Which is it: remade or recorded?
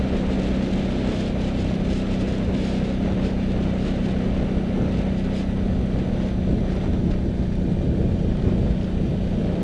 recorded